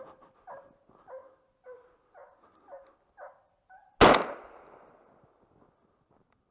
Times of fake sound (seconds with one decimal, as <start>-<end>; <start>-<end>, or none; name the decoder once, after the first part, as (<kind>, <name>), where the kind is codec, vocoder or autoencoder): none